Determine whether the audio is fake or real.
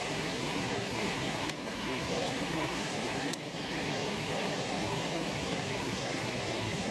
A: fake